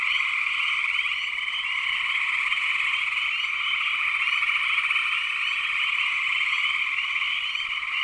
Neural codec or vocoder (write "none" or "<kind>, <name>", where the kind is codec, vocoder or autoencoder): none